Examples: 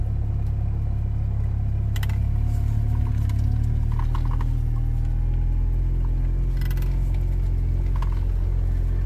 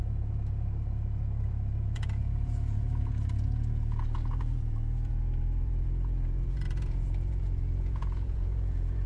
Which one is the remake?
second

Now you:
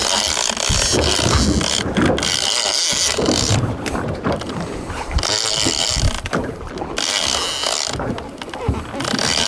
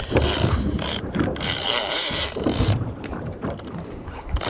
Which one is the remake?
second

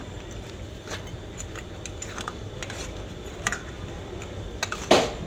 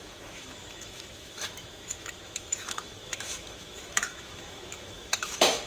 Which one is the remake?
second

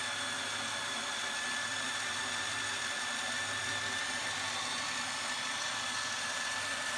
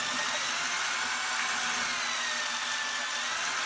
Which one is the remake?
first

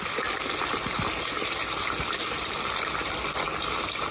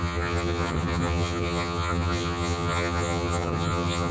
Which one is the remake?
second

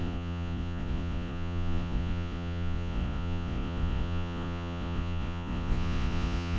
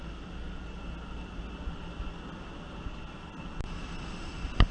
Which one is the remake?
first